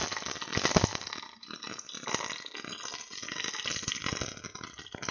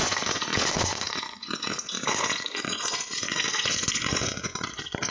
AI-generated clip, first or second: second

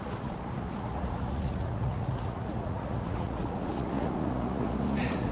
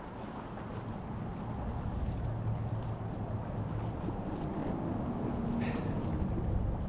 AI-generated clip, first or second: first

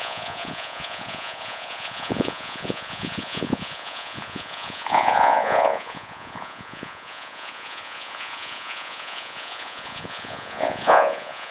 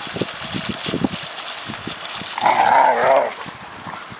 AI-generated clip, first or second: first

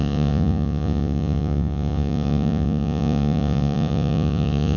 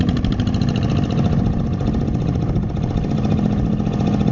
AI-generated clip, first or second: first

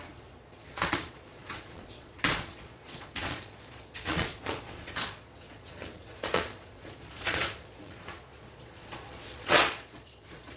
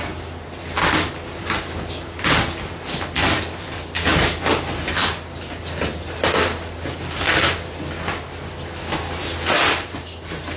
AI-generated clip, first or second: first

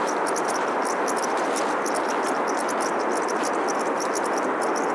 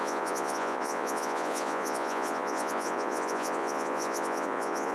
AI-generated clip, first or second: second